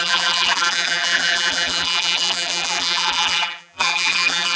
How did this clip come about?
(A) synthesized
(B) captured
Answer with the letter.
A